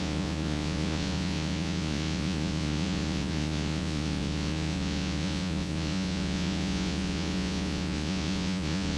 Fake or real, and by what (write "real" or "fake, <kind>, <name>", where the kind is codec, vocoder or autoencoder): fake, vocoder, Vocos